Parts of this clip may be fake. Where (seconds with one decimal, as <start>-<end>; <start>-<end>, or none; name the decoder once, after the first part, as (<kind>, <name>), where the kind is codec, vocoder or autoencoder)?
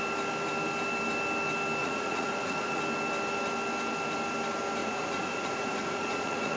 1.8-2.8 (vocoder, Vocos); 4.8-6.6